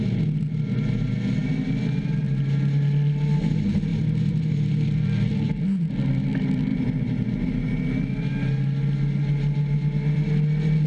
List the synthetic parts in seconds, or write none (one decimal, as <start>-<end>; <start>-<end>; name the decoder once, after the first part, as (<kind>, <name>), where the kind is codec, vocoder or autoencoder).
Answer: 3.9-5.9 (vocoder, BigVGAN v2); 6.7-7.5